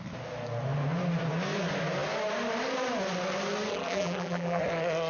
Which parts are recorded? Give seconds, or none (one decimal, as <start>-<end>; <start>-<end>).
0.0-3.7; 4.6-5.1

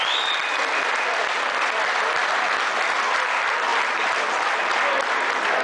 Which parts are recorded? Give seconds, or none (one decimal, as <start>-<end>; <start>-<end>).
0.0-5.6

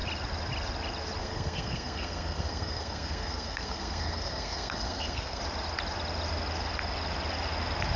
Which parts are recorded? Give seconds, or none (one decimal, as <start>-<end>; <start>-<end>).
0.0-1.2; 5.4-8.0

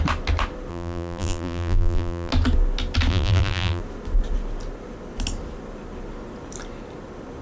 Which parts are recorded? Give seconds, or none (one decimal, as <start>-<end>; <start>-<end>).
0.0-0.7; 2.3-3.1; 3.8-7.4